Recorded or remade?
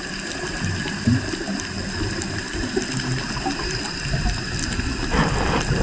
recorded